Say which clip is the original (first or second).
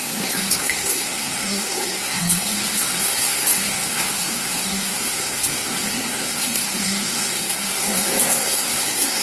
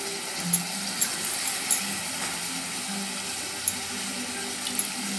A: second